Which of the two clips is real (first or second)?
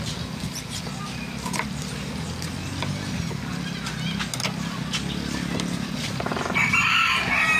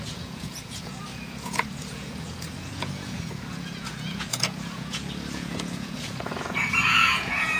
first